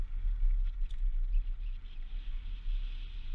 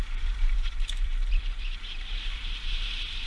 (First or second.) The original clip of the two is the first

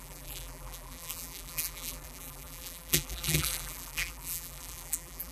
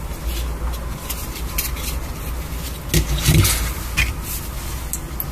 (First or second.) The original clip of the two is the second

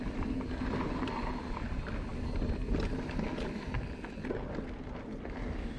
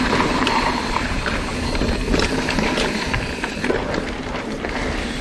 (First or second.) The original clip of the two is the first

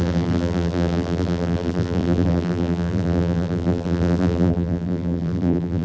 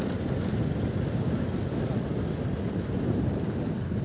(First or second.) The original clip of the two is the second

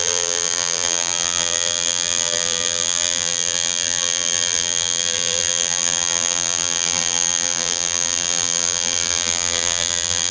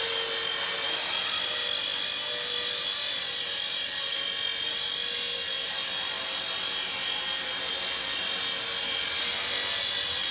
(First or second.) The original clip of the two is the second